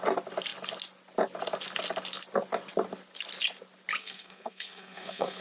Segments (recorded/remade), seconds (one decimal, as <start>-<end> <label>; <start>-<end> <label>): 0.0-4.0 recorded; 4.0-5.4 remade